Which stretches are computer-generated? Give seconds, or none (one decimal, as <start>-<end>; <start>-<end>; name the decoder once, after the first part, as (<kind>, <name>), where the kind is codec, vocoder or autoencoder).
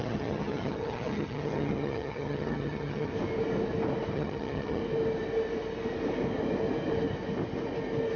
0.0-3.1 (vocoder, HiFi-GAN); 4.1-4.8